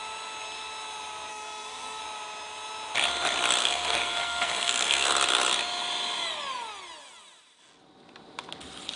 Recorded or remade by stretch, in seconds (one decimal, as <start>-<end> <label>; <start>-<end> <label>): 0.0-1.3 recorded; 1.3-2.0 remade; 2.0-3.6 recorded; 3.6-5.1 remade; 5.1-9.0 recorded